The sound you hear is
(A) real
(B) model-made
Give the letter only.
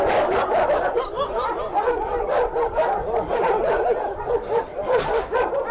A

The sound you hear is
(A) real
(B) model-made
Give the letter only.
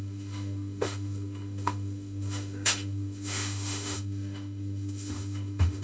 B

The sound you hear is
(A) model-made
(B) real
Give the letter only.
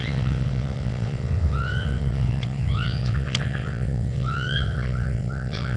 A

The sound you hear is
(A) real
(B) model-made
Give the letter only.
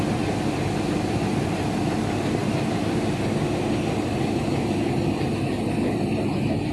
A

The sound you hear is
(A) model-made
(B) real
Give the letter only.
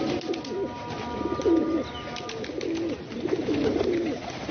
B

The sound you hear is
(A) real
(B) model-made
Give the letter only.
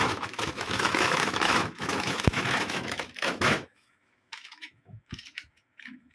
B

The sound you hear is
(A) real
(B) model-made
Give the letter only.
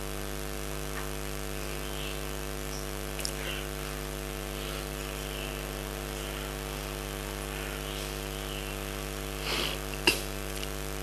A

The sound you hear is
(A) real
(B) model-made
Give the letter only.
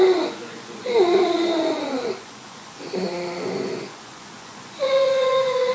B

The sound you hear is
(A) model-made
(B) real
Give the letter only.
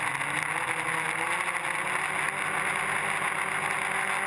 B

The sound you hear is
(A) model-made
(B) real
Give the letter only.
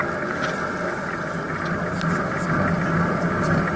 B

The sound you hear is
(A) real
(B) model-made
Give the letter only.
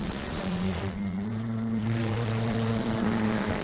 B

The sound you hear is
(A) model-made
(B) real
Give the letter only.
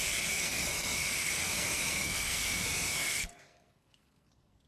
A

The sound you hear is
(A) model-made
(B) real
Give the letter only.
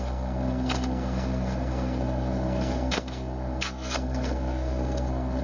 A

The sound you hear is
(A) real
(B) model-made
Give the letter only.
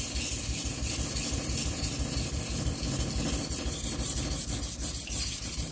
A